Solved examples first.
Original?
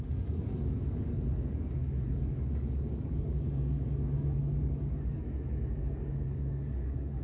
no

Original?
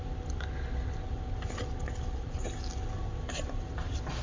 yes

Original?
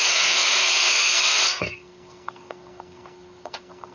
no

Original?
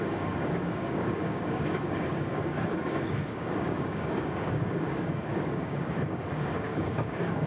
no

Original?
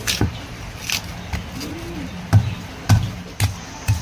yes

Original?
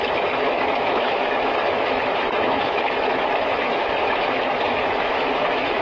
no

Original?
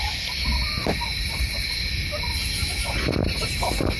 yes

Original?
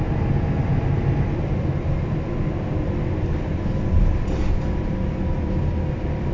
yes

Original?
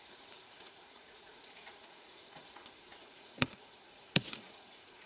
no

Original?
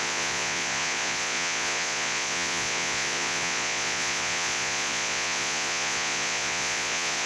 no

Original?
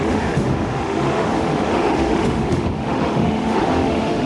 no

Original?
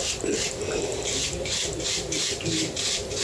no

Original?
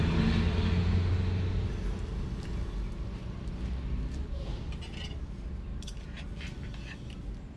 yes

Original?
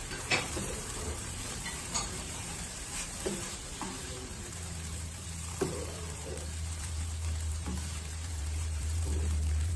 no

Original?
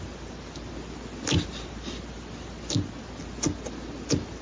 yes